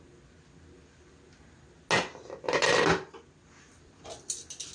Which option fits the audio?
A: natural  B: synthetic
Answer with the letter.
A